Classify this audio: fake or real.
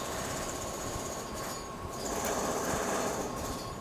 real